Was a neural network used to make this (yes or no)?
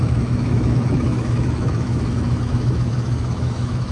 yes